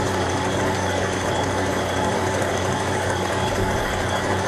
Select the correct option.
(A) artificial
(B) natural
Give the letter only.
A